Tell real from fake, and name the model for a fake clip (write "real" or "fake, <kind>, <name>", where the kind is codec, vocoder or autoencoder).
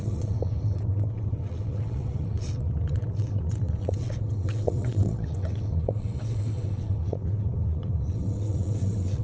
fake, vocoder, WaveNeXt